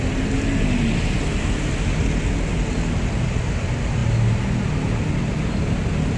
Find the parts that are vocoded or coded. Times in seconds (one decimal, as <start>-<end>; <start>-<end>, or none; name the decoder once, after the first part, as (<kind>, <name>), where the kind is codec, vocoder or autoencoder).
none